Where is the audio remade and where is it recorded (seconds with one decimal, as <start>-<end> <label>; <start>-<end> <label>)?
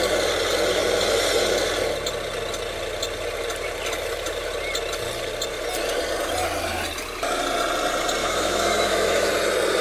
0.0-8.2 recorded; 8.2-9.3 remade; 9.3-9.8 recorded